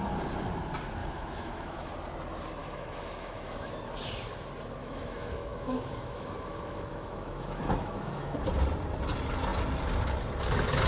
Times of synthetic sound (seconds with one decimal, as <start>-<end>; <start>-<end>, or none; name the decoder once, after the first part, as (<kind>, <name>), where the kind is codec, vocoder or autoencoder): 1.0-1.9 (autoencoder, DAC-VAE); 2.6-3.7; 4.8-8.4